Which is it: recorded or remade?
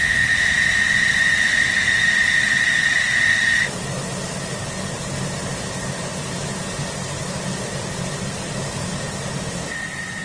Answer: recorded